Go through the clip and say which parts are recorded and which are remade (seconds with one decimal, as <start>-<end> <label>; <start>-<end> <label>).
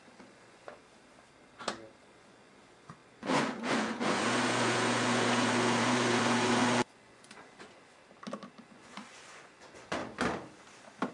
0.0-0.8 remade; 0.8-2.0 recorded; 2.0-8.0 remade; 8.0-8.6 recorded; 8.6-10.0 remade; 10.0-11.1 recorded